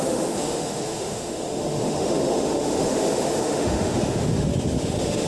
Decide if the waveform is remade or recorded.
remade